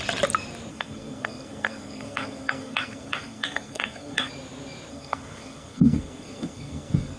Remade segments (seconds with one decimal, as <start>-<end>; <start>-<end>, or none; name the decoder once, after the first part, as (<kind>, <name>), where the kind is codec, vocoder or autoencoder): 0.7-4.3 (codec, SNAC); 4.9-7.2